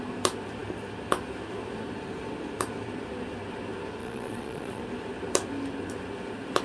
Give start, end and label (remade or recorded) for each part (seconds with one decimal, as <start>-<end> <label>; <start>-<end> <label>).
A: 0.0-4.0 recorded; 4.0-4.8 remade; 4.8-6.6 recorded